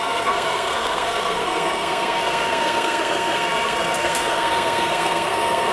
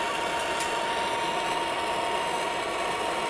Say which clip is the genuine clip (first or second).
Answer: second